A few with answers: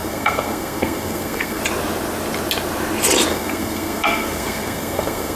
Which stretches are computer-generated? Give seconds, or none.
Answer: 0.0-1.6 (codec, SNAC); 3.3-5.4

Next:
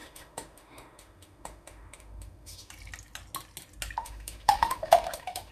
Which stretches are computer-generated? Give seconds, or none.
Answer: 0.0-2.7 (autoencoder, DAC-VAE); 4.0-5.5